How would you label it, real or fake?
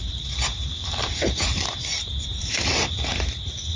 fake